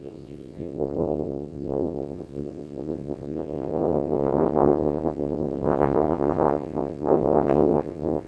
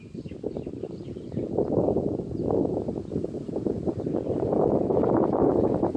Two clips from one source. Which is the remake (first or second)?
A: first